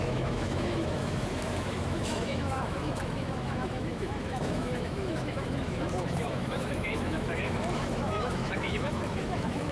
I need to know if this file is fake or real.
fake